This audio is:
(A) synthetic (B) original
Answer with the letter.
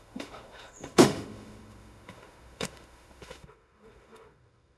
A